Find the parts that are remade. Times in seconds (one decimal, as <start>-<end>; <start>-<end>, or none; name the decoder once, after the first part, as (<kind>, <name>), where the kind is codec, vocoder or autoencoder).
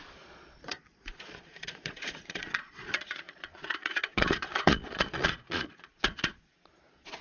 0.0-7.2 (vocoder, Vocos)